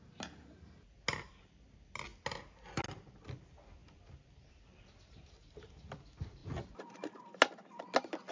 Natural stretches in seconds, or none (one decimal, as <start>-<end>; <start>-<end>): 0.0-8.3

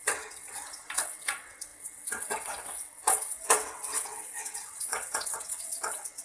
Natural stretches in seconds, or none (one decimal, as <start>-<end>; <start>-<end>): none

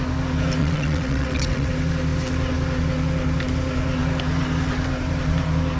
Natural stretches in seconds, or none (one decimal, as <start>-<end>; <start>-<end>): 0.0-0.6; 1.7-5.8

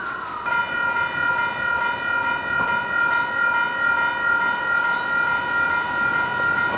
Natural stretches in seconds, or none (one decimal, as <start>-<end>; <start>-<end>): 0.0-6.8